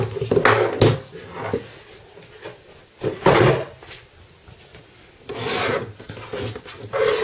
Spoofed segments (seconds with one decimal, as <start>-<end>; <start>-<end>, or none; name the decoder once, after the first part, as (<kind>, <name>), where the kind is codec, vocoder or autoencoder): none